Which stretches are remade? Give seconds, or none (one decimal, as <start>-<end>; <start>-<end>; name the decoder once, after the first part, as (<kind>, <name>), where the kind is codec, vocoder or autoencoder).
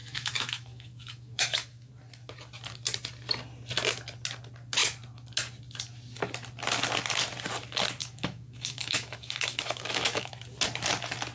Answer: 0.0-1.9 (autoencoder, DAC-VAE); 8.0-10.3